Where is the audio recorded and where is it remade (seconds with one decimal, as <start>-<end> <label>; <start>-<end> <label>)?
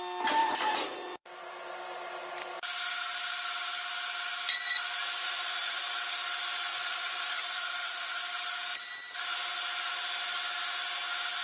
0.0-0.4 recorded; 0.4-1.3 remade; 1.3-5.2 recorded; 5.2-5.8 remade; 5.8-6.7 recorded; 6.7-8.2 remade; 8.2-11.4 recorded